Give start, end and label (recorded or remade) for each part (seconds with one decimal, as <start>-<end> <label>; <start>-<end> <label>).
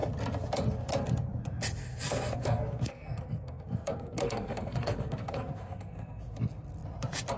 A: 0.0-1.8 recorded; 1.8-6.2 remade; 6.2-7.4 recorded